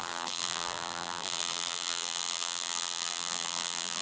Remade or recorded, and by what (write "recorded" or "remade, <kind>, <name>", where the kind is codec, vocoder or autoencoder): remade, vocoder, BigVGAN v2